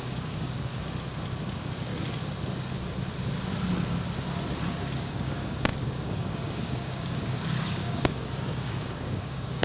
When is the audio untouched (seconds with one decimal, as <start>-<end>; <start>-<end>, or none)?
0.7-1.4; 1.9-4.8